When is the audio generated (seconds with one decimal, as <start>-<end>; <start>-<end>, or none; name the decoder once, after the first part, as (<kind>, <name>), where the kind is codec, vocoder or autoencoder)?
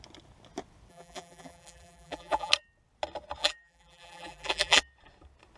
0.9-2.5 (vocoder, BigVGAN v2); 3.4-4.8